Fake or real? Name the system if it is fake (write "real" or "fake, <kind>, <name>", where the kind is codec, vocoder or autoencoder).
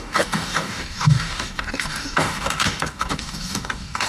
fake, codec, DAC